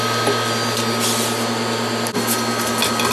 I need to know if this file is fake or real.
real